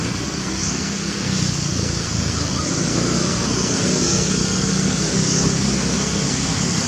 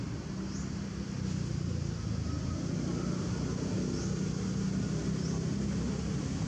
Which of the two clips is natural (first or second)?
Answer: second